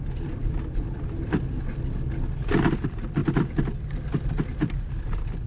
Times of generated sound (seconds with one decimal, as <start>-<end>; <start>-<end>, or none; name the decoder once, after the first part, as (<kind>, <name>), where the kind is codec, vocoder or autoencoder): none